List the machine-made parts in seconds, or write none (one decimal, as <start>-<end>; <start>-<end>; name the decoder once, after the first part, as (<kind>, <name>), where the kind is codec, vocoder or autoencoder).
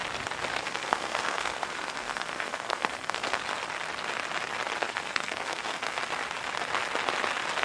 0.6-3.4 (codec, SNAC); 4.8-6.0